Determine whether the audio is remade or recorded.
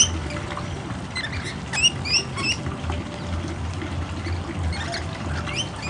recorded